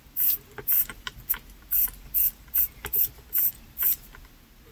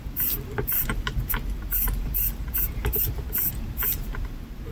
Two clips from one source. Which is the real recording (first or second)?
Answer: first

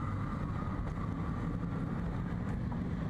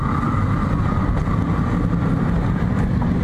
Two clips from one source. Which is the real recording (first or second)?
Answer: first